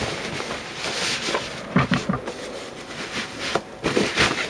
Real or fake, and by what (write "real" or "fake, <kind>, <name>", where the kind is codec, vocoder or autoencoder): real